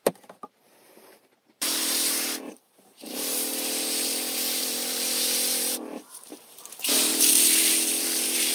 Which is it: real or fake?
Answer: fake